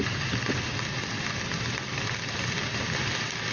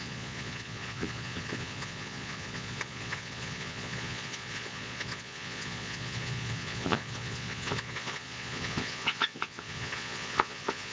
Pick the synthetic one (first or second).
second